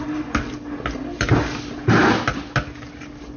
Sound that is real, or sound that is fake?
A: real